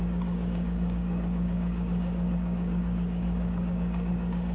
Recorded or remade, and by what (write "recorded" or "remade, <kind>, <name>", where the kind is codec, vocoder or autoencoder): remade, codec, DAC